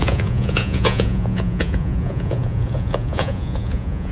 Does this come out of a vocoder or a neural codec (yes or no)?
yes